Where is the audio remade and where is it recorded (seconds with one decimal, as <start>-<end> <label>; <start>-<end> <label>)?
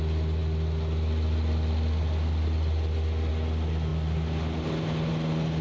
0.0-5.6 recorded